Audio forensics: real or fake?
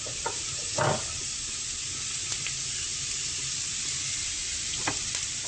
fake